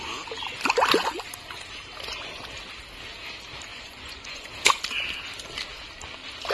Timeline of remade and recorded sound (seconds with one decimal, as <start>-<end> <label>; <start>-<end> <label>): 0.0-3.7 recorded; 3.7-4.5 remade; 4.5-6.5 recorded